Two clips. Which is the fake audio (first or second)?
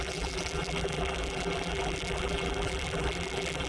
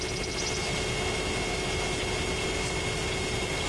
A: first